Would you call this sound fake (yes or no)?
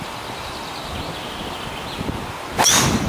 no